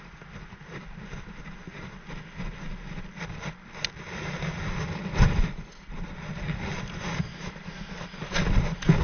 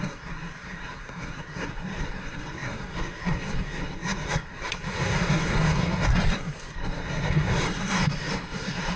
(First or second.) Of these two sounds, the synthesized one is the second